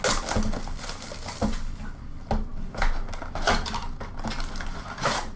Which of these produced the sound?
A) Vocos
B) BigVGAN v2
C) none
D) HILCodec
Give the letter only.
C